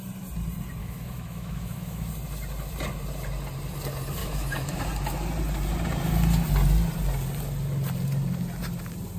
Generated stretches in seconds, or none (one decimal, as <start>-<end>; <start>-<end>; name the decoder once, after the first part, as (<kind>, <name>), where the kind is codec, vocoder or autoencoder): 0.8-2.1 (autoencoder, DAC-VAE); 4.2-4.8